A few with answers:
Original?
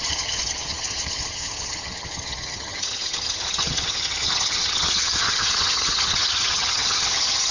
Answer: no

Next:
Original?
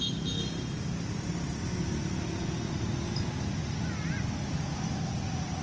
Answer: yes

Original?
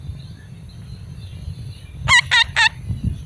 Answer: yes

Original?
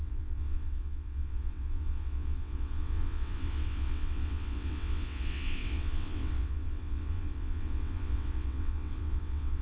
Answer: no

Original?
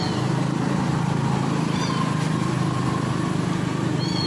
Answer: yes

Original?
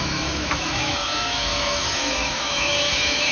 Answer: no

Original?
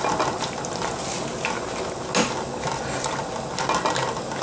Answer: yes